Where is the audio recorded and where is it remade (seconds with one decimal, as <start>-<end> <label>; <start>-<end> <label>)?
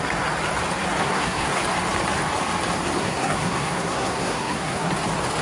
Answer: 0.0-1.0 recorded; 1.0-1.6 remade; 1.6-3.0 recorded; 3.0-4.9 remade; 4.9-5.4 recorded